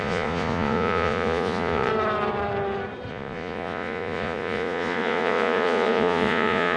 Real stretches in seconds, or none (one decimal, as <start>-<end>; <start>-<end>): 1.9-3.1